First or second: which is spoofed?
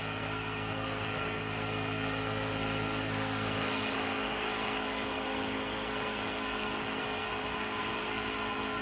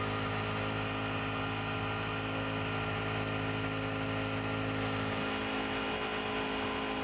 first